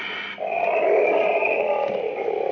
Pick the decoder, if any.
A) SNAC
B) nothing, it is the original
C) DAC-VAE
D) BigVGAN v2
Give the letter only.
B